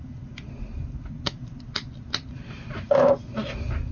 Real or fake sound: real